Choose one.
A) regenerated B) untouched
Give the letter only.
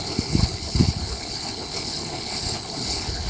A